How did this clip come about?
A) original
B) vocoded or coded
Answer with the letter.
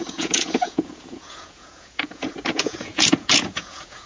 B